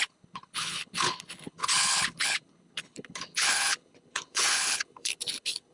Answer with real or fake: fake